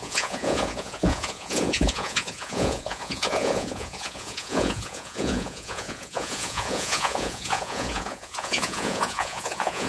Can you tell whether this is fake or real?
fake